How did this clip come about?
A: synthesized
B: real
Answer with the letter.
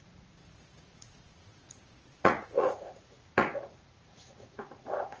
A